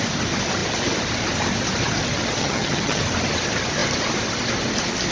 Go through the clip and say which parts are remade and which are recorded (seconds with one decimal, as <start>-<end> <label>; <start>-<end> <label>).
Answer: 0.0-2.4 recorded; 2.4-3.0 remade; 3.0-5.1 recorded